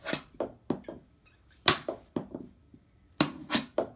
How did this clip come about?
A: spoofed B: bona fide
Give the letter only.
B